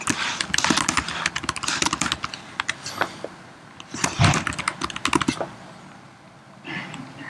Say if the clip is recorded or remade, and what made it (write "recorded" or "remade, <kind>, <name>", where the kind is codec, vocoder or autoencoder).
recorded